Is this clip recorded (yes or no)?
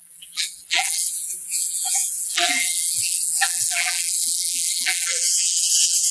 no